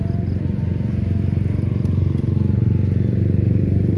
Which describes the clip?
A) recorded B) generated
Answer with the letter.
A